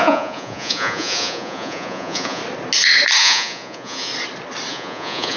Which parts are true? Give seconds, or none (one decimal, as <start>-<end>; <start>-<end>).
2.4-3.2; 4.1-4.7